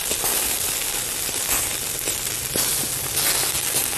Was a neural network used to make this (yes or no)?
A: no